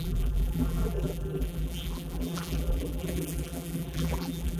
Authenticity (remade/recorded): remade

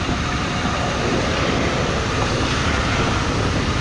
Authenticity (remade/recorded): recorded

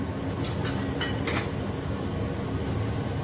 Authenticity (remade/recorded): recorded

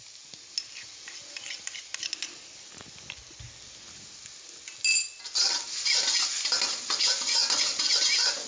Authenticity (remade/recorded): recorded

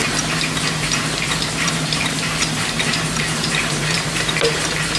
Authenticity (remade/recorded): remade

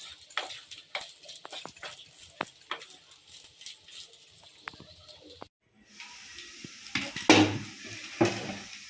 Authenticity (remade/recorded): recorded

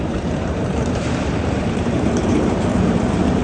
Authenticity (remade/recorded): remade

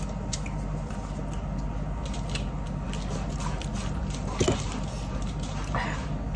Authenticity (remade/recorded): recorded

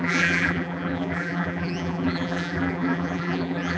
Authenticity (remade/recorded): remade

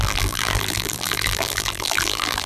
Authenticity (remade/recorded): remade